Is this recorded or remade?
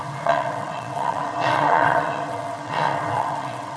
remade